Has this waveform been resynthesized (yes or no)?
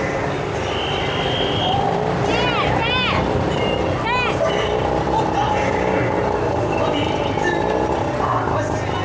no